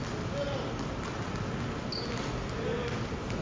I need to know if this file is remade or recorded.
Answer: recorded